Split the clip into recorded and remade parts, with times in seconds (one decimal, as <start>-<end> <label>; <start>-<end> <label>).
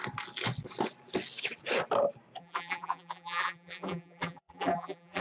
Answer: 0.0-2.4 recorded; 2.4-5.2 remade